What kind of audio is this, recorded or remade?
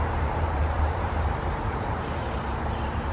remade